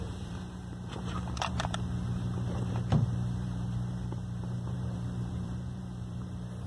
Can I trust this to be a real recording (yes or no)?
no